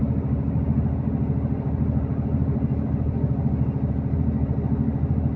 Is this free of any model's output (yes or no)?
yes